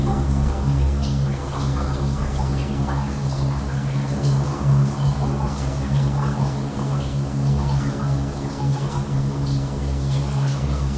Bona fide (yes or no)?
no